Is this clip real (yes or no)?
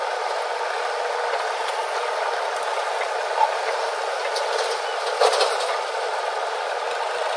yes